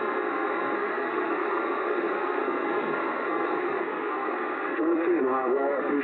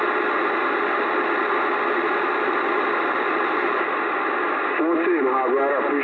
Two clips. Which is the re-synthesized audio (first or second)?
first